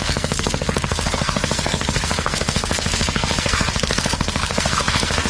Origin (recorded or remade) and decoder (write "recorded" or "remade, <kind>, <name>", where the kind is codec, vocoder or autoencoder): remade, codec, SNAC